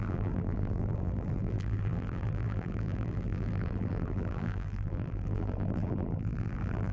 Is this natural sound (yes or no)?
no